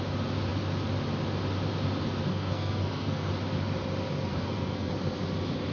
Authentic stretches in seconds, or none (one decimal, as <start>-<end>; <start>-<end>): 0.0-2.3; 3.3-4.3; 4.9-5.7